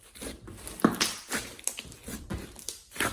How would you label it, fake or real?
real